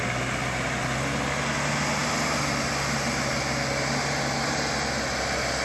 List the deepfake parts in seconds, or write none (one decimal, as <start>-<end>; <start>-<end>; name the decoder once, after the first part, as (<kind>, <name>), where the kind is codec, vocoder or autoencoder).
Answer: none